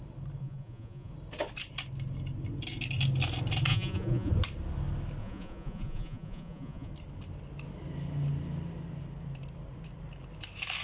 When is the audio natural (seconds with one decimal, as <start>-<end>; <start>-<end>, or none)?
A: 0.0-0.4; 1.1-3.7; 4.3-5.2; 6.9-10.8